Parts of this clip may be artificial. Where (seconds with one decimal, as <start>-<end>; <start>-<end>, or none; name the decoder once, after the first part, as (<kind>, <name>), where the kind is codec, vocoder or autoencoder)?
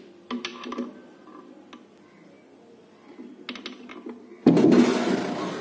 0.0-0.5 (vocoder, BigVGAN v2); 3.9-4.4